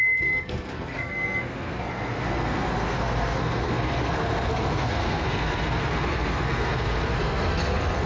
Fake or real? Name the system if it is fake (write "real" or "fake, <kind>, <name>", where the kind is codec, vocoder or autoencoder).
fake, codec, SNAC